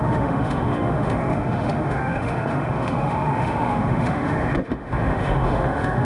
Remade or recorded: remade